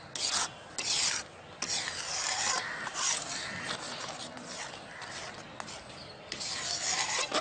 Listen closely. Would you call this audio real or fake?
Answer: real